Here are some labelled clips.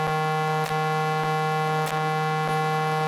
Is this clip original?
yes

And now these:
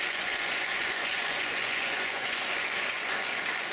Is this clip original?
no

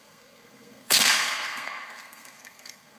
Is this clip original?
no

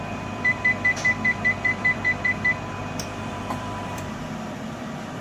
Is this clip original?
no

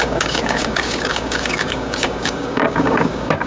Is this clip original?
no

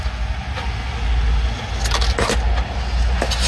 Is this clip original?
yes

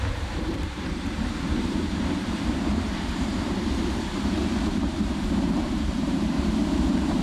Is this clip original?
no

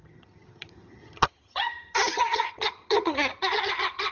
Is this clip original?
no